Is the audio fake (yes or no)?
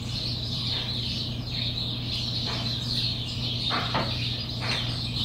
no